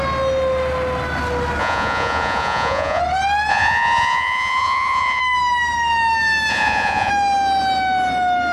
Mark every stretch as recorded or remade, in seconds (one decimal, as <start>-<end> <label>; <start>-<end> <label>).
0.0-1.6 recorded; 1.6-3.0 remade; 3.0-3.5 recorded; 3.5-5.2 remade; 5.2-6.5 recorded; 6.5-7.1 remade; 7.1-8.5 recorded